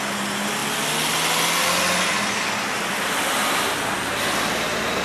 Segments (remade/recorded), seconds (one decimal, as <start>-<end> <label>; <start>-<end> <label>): 0.0-5.0 recorded